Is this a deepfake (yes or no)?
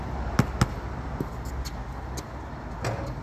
no